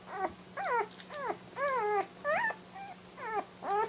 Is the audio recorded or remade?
recorded